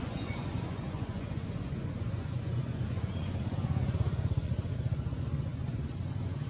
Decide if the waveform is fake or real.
fake